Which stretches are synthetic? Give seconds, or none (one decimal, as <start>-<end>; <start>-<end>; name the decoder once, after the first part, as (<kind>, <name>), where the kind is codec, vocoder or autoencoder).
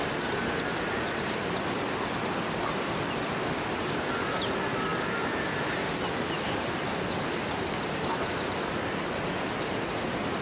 none